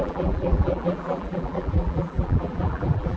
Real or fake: fake